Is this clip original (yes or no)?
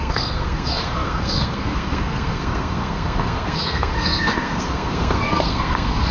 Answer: no